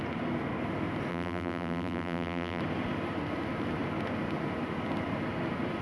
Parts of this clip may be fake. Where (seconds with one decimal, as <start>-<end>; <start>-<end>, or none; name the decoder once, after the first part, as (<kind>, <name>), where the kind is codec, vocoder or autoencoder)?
1.1-2.6 (vocoder, BigVGAN v2)